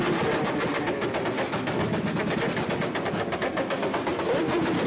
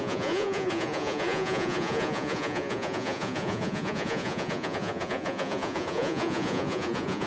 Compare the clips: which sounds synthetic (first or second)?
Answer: second